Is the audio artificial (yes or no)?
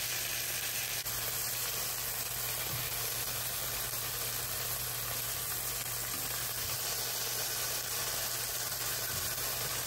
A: no